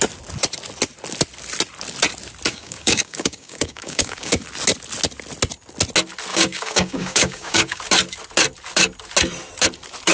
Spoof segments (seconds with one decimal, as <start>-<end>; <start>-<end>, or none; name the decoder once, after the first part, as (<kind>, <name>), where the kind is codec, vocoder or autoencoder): 2.5-4.3 (codec, DAC); 6.3-7.8